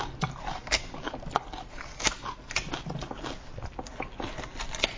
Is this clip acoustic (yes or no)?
yes